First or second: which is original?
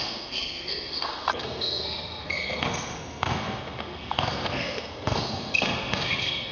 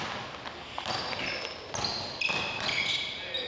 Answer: second